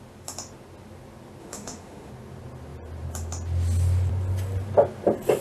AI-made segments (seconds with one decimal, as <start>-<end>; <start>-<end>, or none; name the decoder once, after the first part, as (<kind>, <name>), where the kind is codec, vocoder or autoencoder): 1.4-2.1 (autoencoder, DAC-VAE)